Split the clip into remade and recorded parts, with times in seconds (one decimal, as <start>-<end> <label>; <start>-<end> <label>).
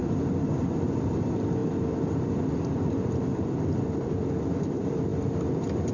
0.0-1.6 remade; 1.6-2.7 recorded; 2.7-5.9 remade